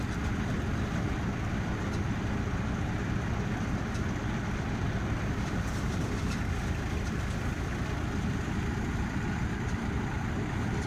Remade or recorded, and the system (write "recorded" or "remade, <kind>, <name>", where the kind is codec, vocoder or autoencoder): recorded